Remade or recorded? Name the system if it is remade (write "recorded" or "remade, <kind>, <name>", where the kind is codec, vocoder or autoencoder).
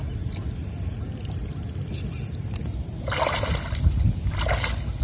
recorded